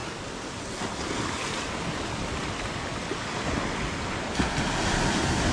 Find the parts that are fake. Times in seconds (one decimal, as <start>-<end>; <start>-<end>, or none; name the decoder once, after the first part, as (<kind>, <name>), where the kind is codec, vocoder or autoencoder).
none